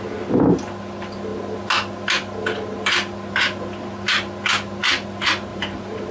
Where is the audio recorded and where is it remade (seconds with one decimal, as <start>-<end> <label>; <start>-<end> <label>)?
0.0-5.5 recorded; 5.5-6.1 remade